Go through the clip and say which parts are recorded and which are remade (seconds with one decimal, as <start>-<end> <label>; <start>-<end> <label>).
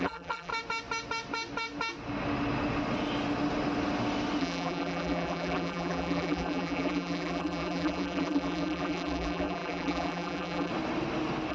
0.0-0.5 remade; 0.5-4.4 recorded; 4.4-10.7 remade; 10.7-11.5 recorded